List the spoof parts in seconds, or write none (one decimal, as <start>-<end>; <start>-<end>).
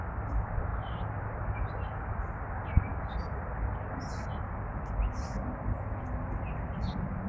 none